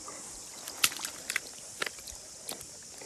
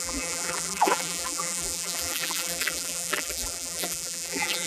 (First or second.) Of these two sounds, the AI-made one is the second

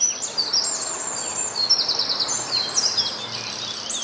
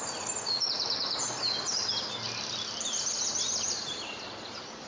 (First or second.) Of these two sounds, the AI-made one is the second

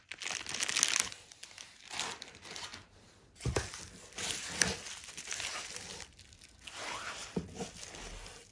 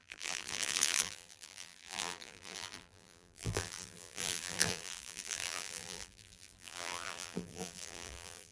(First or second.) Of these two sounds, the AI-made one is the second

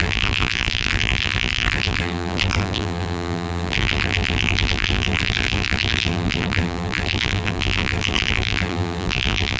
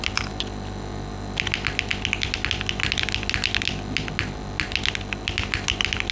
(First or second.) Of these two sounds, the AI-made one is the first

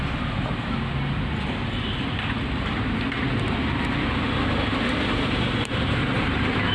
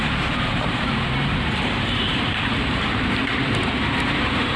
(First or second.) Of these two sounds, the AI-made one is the second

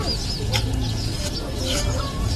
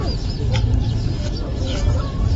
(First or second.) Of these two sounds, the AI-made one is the second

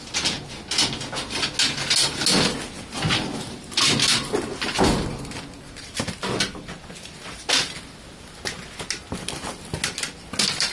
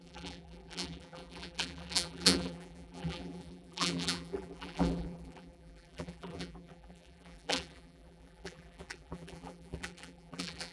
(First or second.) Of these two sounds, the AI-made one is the second